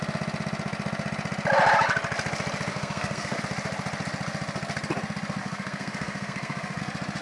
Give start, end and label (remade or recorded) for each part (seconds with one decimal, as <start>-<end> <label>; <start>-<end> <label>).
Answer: 0.0-2.7 recorded; 2.7-3.4 remade; 3.4-5.4 recorded; 5.4-6.8 remade; 6.8-7.2 recorded